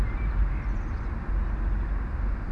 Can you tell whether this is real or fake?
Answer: real